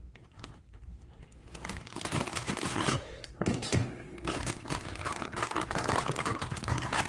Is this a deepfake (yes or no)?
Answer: yes